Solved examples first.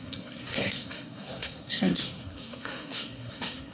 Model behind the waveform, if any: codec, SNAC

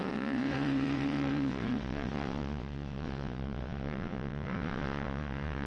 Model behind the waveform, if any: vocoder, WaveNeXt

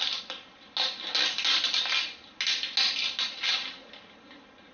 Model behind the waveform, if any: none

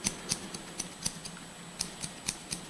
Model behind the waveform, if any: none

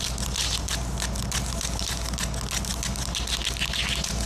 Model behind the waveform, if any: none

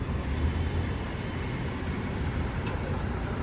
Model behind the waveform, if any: vocoder, BigVGAN v2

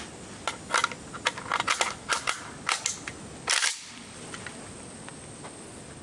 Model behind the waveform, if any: none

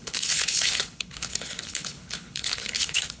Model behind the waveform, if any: codec, HILCodec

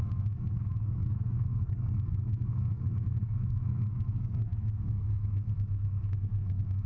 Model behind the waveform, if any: codec, SNAC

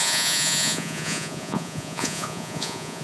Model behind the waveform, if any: vocoder, Vocos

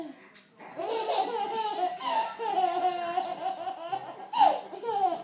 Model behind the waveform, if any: none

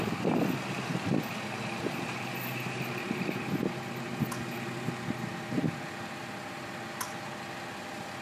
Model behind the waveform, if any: none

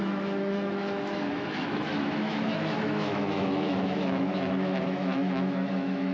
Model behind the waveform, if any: autoencoder, DAC-VAE